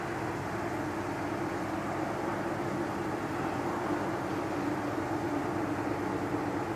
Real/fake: real